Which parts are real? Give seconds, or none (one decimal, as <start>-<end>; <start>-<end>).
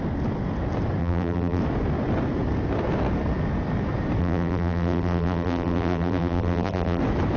0.0-1.0; 1.6-4.2; 7.0-7.4